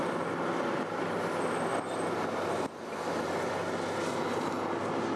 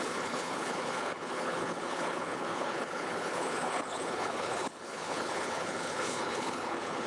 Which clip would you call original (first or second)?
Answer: first